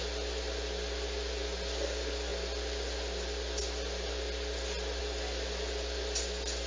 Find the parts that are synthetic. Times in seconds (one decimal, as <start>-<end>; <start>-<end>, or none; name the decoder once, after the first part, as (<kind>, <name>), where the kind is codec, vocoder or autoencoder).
none